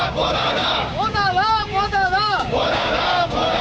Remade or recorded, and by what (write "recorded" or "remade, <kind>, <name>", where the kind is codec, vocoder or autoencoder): remade, codec, DAC